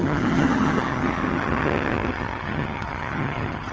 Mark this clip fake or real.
fake